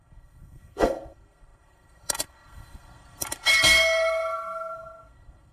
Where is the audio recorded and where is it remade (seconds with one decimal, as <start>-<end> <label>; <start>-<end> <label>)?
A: 0.0-5.5 remade